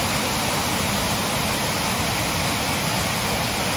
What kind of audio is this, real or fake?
real